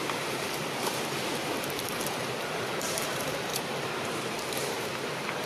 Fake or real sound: fake